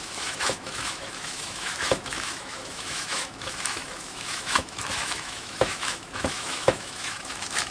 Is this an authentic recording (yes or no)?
no